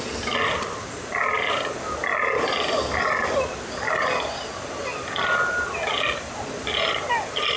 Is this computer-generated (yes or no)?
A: no